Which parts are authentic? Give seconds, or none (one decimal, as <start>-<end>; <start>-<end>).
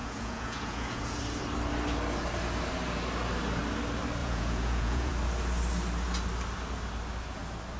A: 1.2-4.2; 5.1-7.8